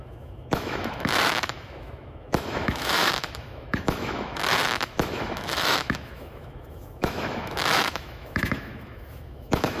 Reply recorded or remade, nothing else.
remade